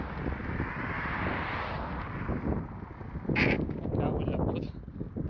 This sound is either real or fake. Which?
real